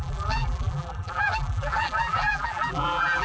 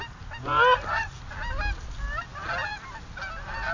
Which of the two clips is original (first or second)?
second